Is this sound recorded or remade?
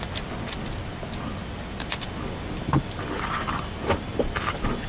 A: recorded